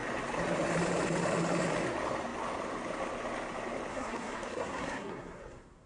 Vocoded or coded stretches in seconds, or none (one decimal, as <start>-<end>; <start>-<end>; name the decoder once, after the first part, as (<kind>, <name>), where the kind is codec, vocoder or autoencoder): 3.9-5.9 (codec, SNAC)